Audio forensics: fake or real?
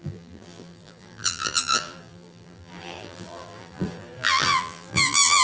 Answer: fake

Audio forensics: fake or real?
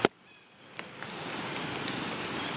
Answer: fake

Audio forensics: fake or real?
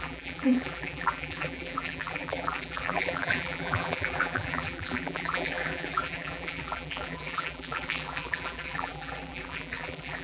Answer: fake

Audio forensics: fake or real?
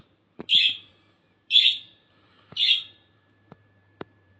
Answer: fake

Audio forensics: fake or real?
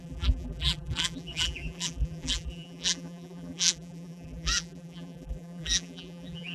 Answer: fake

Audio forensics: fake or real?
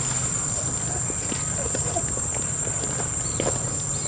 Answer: real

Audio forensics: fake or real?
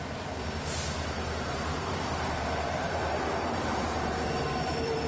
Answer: fake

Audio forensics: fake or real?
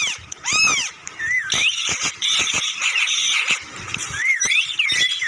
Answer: fake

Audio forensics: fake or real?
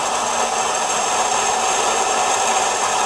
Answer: fake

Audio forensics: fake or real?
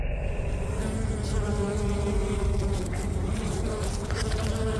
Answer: fake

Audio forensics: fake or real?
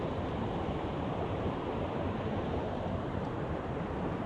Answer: fake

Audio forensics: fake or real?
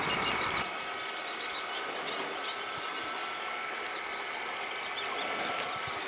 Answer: real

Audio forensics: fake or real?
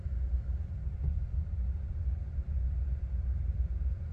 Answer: fake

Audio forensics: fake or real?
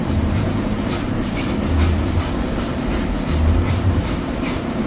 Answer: fake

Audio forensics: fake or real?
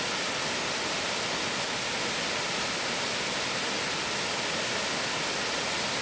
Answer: real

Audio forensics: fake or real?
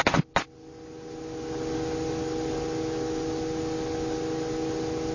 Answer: real